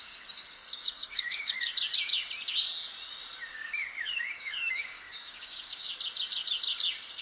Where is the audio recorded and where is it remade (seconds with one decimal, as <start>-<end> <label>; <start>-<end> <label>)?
0.0-0.7 recorded; 0.7-1.7 remade; 1.7-3.5 recorded; 3.5-5.9 remade; 5.9-7.2 recorded